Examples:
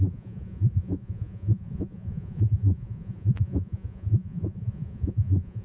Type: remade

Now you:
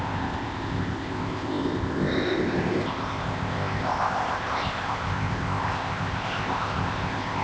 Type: remade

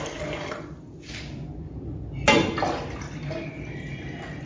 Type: recorded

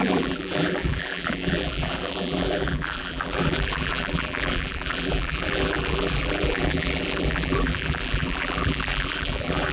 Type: remade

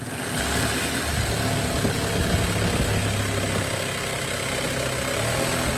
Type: recorded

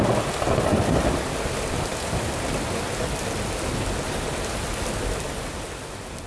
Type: recorded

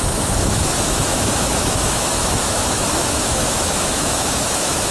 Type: remade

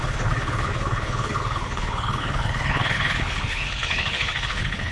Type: remade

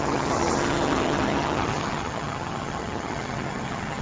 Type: remade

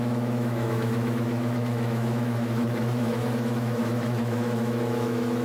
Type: remade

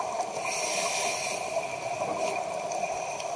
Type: recorded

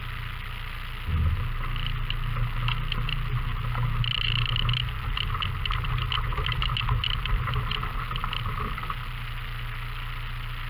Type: recorded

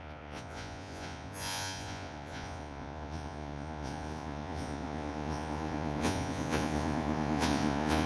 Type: remade